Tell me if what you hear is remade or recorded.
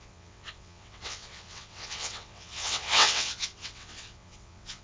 remade